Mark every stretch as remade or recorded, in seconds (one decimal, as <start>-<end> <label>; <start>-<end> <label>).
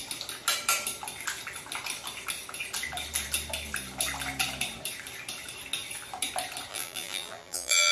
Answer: 0.0-6.7 recorded; 6.7-7.9 remade